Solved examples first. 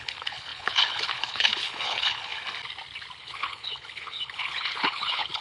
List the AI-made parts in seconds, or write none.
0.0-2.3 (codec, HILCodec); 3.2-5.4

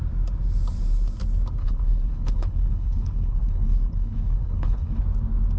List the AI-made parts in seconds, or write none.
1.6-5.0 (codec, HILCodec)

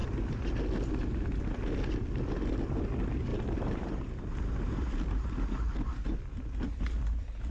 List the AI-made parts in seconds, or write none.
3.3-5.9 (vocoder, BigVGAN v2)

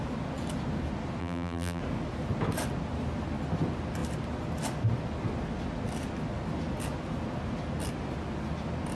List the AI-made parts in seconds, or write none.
1.2-1.8 (vocoder, BigVGAN v2)